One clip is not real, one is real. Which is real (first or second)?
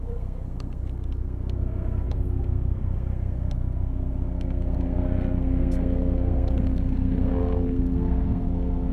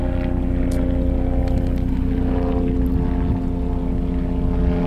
second